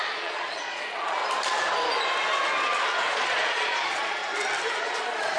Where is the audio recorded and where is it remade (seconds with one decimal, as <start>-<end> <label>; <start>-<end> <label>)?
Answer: 0.0-1.2 remade; 1.2-3.1 recorded; 3.1-4.2 remade; 4.2-4.7 recorded; 4.7-5.4 remade